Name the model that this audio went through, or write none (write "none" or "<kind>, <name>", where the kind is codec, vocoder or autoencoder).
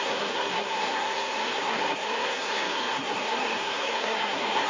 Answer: codec, SNAC